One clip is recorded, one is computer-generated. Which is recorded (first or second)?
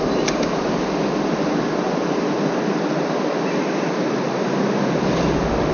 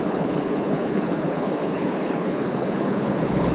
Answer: first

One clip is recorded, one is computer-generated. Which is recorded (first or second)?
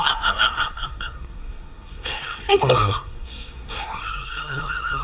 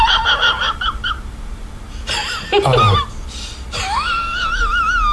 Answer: second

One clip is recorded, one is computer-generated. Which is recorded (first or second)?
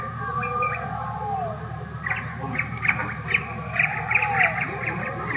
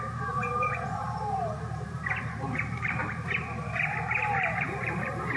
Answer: first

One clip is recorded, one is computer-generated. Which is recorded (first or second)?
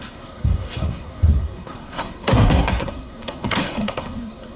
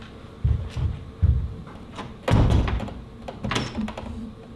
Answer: second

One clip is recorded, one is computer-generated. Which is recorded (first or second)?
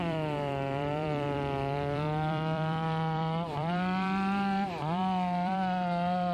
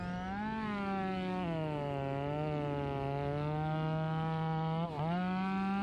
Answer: second